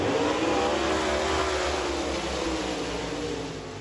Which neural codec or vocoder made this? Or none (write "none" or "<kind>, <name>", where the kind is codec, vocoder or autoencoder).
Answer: none